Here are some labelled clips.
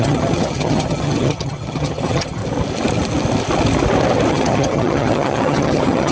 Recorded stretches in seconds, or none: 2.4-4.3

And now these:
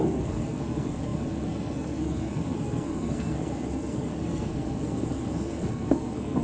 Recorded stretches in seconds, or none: none

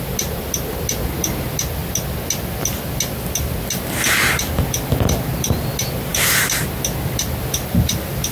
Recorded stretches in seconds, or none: 0.0-8.3

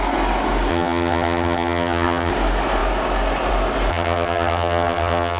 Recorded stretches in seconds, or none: 0.0-0.7; 2.3-3.9

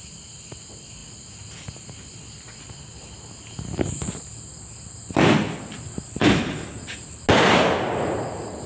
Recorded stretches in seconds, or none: 0.0-8.7

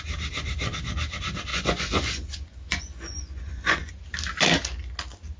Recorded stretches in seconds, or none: 0.0-1.5; 3.9-5.4

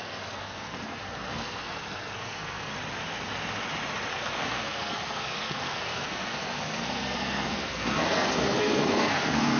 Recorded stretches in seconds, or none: 2.7-4.1